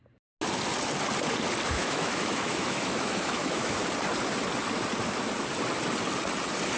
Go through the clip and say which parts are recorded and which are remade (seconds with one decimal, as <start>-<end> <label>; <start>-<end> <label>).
0.0-1.7 recorded; 1.7-3.8 remade; 3.8-6.8 recorded

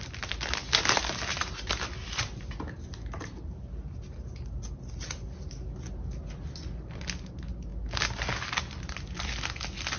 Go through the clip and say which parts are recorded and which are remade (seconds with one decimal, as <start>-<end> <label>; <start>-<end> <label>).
0.0-10.0 recorded

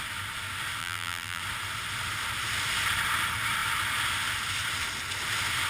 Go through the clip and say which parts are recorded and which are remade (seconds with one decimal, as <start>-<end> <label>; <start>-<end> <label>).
0.0-0.8 recorded; 0.8-1.4 remade; 1.4-5.7 recorded

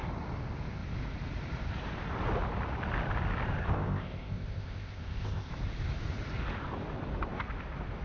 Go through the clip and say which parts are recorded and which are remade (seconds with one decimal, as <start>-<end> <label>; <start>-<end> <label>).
0.0-3.6 recorded; 3.6-5.5 remade; 5.5-8.0 recorded

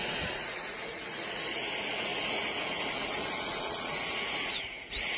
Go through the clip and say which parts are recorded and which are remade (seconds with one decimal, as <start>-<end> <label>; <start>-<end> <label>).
0.0-5.2 remade

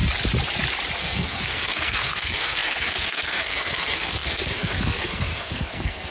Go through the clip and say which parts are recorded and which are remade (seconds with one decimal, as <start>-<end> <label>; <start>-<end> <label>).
0.0-1.0 recorded; 1.0-6.1 remade